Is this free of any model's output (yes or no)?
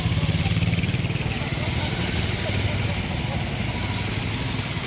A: yes